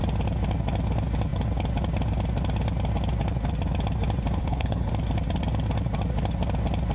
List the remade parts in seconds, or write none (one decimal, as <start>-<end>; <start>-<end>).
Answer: 4.4-4.9